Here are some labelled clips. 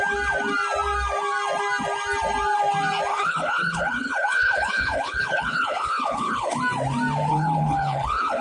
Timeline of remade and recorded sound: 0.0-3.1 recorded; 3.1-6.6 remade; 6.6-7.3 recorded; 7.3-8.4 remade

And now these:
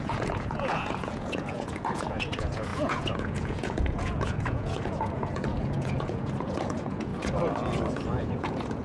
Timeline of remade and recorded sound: 0.0-7.1 remade; 7.1-7.9 recorded; 7.9-8.8 remade

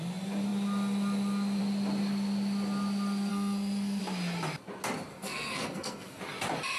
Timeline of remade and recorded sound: 0.0-3.3 recorded; 3.3-4.0 remade; 4.0-5.1 recorded; 5.1-6.2 remade; 6.2-6.8 recorded

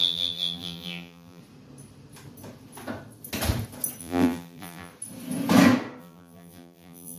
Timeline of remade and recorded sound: 0.0-1.4 remade; 1.4-4.0 recorded; 4.0-4.9 remade; 4.9-6.0 recorded; 6.0-7.2 remade